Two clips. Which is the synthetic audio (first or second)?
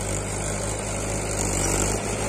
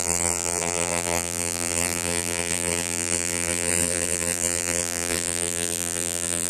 second